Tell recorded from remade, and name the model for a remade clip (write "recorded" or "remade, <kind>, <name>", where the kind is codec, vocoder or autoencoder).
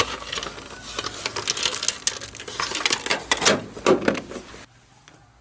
recorded